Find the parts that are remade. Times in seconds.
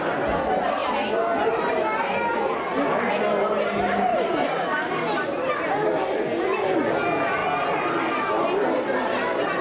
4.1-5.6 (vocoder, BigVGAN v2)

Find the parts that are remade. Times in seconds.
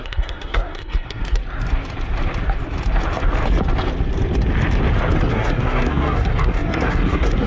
0.0-1.4 (codec, SNAC); 5.3-7.5